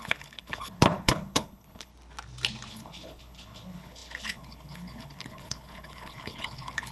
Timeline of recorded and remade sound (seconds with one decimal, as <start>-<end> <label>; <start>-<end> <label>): 0.0-1.9 remade; 1.9-2.7 recorded; 2.7-6.9 remade

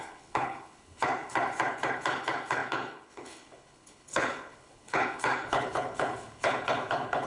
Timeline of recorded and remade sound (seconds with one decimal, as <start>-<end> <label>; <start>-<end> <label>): 0.0-7.3 remade

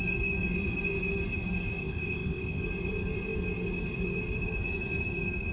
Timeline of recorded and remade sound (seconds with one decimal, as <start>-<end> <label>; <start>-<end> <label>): 0.0-1.8 recorded; 1.8-2.6 remade; 2.6-5.5 recorded

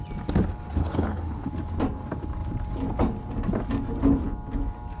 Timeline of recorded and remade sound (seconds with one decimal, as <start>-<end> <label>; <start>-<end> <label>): 0.0-0.8 recorded; 0.8-1.5 remade; 1.5-5.0 recorded

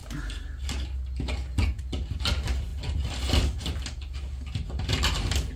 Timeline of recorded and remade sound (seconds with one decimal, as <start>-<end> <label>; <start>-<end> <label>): 0.0-5.6 recorded